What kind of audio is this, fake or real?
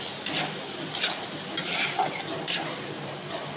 real